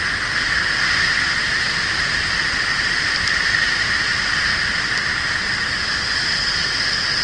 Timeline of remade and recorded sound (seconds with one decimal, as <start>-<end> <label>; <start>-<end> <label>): 0.0-7.2 recorded